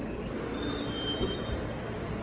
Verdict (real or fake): real